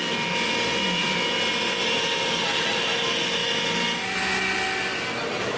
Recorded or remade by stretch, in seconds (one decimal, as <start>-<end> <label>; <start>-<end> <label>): 0.0-3.4 recorded; 3.4-5.6 remade